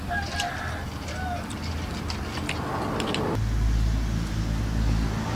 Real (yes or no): yes